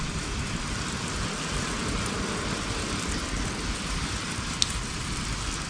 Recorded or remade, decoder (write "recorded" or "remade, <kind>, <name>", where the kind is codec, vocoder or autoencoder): recorded